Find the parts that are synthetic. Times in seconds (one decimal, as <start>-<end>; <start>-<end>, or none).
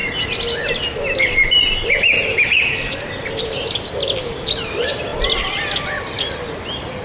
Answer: none